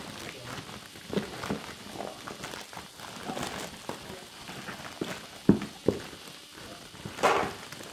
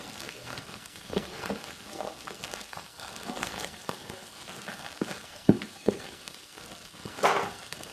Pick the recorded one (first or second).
first